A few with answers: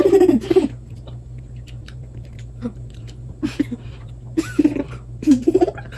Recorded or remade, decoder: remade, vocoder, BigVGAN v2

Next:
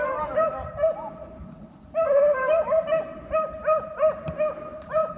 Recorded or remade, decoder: remade, vocoder, BigVGAN v2